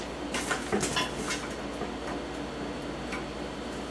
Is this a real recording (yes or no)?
yes